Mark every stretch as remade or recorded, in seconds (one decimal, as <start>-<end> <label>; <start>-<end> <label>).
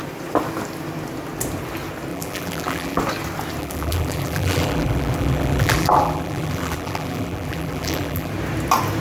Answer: 0.0-2.1 recorded; 2.1-3.0 remade; 3.0-3.6 recorded; 3.6-8.3 remade; 8.3-9.0 recorded